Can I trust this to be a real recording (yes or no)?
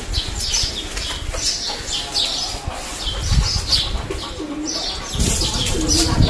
yes